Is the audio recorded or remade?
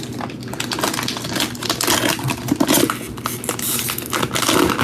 recorded